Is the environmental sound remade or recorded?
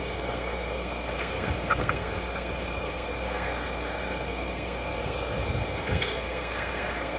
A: remade